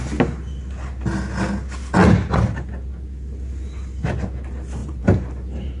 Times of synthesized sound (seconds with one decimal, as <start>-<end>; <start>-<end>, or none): 4.8-5.3